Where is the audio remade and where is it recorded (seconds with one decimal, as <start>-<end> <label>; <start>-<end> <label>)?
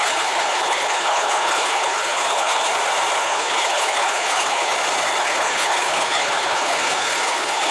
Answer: 0.0-2.7 remade; 2.7-3.2 recorded; 3.2-4.7 remade; 4.7-5.2 recorded; 5.2-7.7 remade